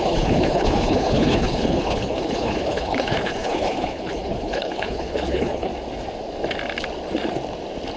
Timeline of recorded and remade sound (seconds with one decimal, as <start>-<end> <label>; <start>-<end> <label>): 0.0-5.7 remade; 5.7-8.0 recorded